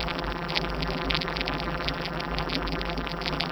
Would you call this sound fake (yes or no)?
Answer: yes